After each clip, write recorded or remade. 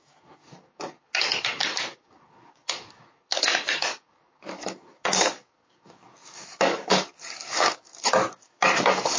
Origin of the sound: remade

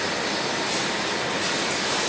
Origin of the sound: recorded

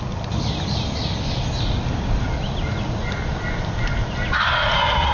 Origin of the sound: recorded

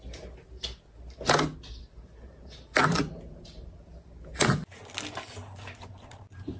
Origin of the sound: recorded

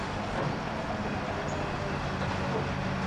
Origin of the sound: recorded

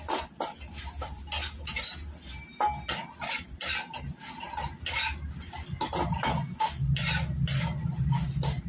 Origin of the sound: recorded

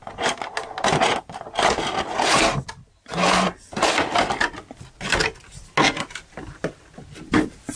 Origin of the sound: recorded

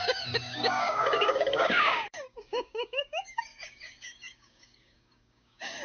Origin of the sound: remade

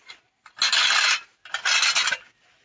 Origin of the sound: recorded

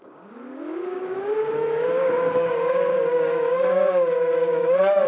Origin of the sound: remade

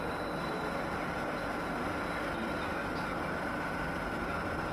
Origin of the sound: recorded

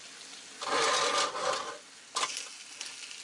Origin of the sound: recorded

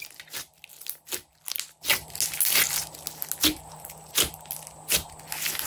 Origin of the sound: recorded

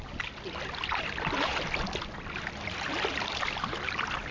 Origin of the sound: recorded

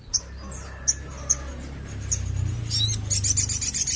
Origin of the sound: recorded